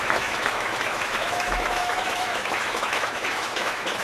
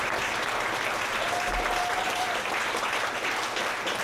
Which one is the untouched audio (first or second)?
second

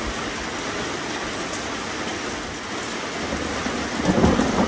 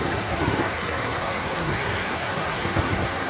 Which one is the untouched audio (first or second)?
first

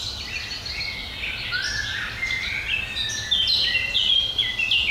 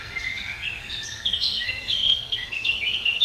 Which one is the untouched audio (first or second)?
first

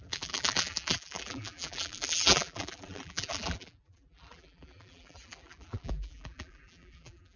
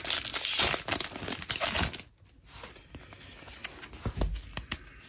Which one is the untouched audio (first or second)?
second